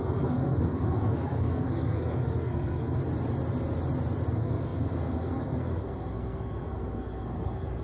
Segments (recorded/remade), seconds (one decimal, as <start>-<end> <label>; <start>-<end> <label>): 0.0-3.0 remade; 3.0-4.3 recorded; 4.3-7.8 remade

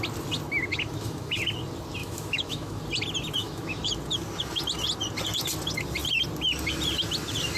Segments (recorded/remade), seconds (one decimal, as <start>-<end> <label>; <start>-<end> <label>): 0.0-0.7 recorded; 0.7-1.4 remade; 1.4-2.0 recorded; 2.0-2.8 remade; 2.8-3.4 recorded; 3.4-3.9 remade; 3.9-7.6 recorded

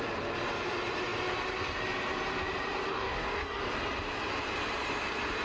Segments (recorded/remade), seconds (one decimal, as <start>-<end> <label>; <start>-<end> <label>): 0.0-2.9 recorded; 2.9-3.6 remade; 3.6-5.4 recorded

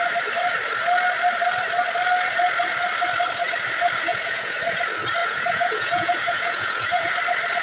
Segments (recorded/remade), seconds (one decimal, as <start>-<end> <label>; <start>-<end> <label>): 0.0-4.1 recorded; 4.1-4.6 remade; 4.6-5.2 recorded; 5.2-7.1 remade; 7.1-7.6 recorded

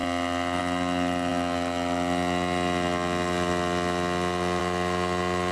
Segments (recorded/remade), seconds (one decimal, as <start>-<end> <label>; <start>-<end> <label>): 0.0-5.5 recorded

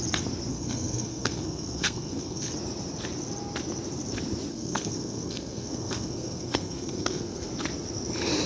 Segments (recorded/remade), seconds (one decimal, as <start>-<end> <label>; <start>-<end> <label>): 0.0-0.5 recorded; 0.5-2.5 remade; 2.5-4.5 recorded; 4.5-7.5 remade; 7.5-8.5 recorded